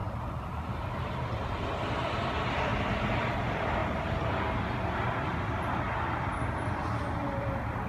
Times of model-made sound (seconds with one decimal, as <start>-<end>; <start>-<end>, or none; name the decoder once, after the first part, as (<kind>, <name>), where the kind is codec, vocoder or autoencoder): 0.0-2.7 (vocoder, BigVGAN v2); 3.3-3.8; 7.4-7.9